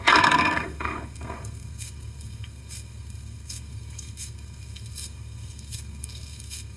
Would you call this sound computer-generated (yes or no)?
yes